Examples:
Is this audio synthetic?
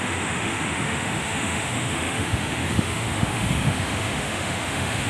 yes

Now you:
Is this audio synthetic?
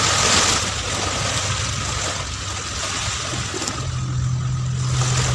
no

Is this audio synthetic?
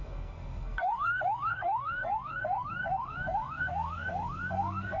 yes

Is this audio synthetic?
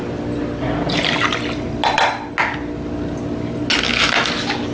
no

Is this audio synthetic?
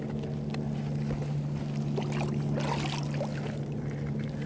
no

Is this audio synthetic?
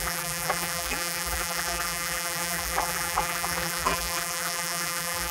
yes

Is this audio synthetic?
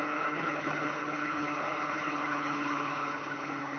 yes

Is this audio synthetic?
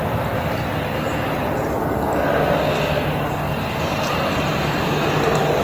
no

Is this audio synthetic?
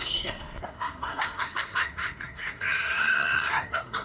yes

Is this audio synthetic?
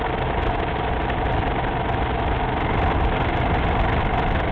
no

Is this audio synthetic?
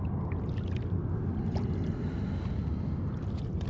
no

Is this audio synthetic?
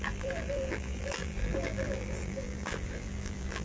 yes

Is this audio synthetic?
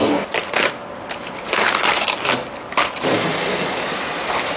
no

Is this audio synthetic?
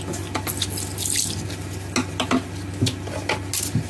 no